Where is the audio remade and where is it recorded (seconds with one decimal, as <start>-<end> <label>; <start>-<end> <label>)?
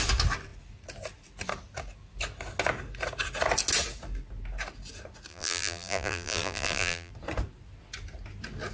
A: 0.0-5.3 recorded; 5.3-7.1 remade; 7.1-8.7 recorded